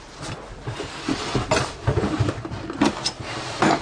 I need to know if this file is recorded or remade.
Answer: remade